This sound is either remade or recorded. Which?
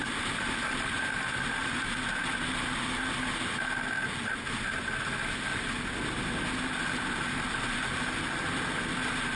recorded